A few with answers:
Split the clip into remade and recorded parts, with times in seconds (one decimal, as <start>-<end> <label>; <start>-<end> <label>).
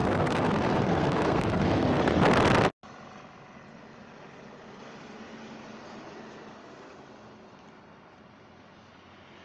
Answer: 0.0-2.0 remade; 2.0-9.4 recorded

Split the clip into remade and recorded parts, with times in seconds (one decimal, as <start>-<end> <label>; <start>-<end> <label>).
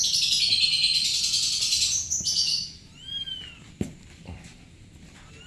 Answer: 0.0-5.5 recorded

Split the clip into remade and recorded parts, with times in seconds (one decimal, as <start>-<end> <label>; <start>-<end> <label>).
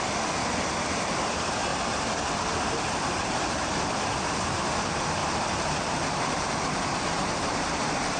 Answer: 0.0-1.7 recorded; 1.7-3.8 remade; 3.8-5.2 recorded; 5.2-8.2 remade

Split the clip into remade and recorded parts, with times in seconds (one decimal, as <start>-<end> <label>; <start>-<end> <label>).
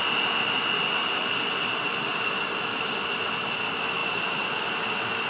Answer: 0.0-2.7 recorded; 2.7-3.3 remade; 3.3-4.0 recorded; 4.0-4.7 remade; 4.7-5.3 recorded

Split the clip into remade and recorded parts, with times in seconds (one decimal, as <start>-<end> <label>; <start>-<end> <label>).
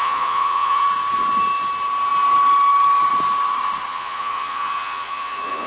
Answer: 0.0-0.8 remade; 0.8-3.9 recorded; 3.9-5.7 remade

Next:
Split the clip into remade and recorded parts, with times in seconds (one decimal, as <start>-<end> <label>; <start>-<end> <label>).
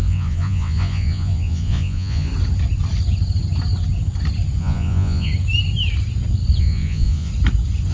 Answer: 0.0-2.3 remade; 2.3-4.6 recorded; 4.6-5.3 remade; 5.3-6.6 recorded; 6.6-7.3 remade; 7.3-7.9 recorded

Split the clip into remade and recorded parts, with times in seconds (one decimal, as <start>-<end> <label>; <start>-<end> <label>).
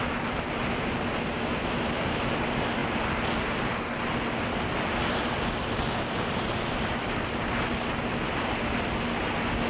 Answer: 0.0-9.7 recorded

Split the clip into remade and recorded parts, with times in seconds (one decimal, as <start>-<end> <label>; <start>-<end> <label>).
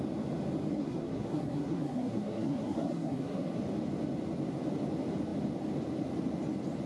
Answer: 0.0-0.7 recorded; 0.7-3.6 remade; 3.6-6.9 recorded